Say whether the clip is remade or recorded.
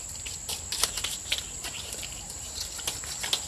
recorded